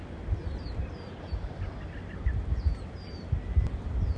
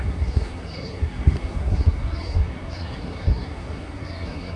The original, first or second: first